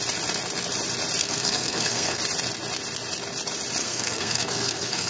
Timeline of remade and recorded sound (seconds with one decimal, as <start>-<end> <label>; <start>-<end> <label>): 0.0-1.2 recorded; 1.2-2.2 remade; 2.2-3.8 recorded; 3.8-5.1 remade